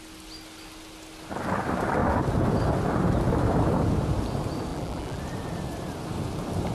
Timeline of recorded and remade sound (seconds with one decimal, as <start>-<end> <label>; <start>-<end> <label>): 0.0-4.7 recorded; 4.7-5.2 remade; 5.2-6.7 recorded